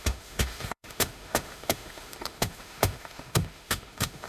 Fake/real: fake